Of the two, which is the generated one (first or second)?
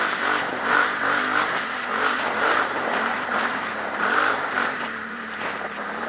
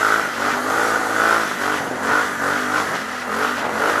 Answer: first